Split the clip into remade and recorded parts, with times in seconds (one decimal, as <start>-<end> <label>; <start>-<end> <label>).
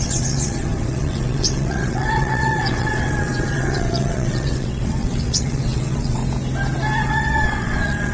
0.0-6.2 remade; 6.2-7.1 recorded; 7.1-8.1 remade